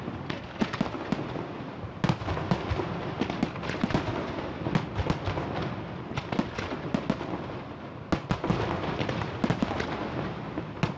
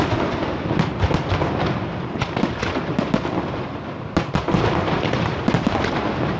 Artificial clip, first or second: second